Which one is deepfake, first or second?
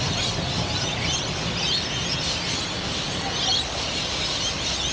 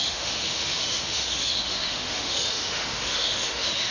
second